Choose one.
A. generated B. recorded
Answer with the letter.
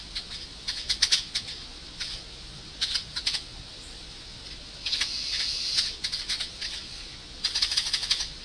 A